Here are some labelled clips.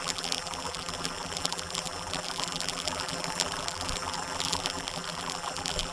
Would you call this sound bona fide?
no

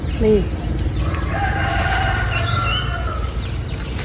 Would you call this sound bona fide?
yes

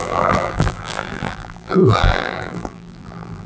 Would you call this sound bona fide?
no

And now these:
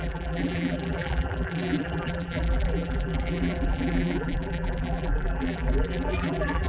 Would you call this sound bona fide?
no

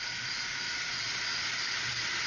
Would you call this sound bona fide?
no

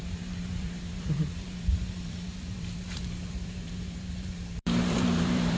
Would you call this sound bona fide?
no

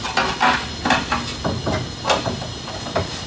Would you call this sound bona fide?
yes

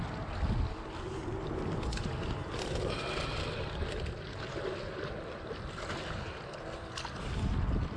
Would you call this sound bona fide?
yes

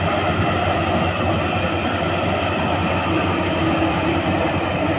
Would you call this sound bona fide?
yes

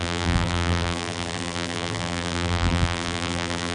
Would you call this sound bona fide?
no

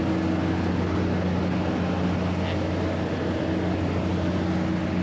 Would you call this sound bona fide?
yes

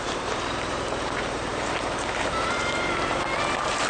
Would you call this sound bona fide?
no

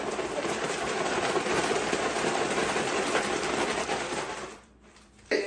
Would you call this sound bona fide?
no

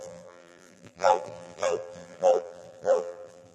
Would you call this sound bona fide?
no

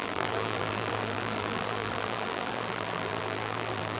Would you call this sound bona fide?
no